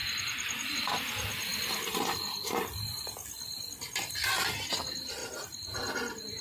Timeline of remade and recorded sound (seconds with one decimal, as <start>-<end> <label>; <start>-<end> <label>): 0.0-0.7 remade; 0.7-5.2 recorded; 5.2-6.4 remade